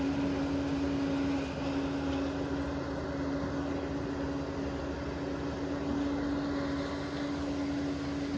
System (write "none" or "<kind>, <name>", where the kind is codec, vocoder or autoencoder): none